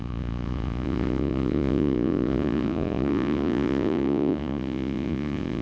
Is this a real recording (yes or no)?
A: no